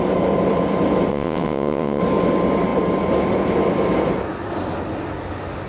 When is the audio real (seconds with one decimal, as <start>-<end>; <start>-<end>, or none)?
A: 0.0-1.1; 2.0-5.7

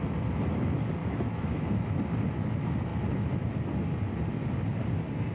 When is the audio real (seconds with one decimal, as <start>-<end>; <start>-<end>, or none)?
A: 0.0-1.0; 2.0-5.3

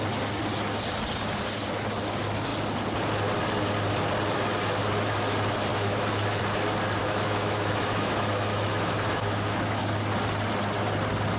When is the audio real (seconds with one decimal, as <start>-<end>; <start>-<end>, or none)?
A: 0.0-5.7; 6.4-7.0; 9.8-11.4

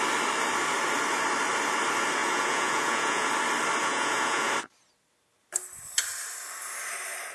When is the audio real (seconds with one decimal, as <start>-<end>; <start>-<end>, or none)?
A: 0.0-2.2; 3.3-3.8; 4.5-7.3